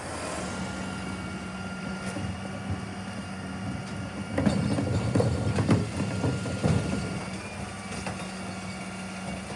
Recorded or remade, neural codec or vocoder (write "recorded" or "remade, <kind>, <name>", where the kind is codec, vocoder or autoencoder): recorded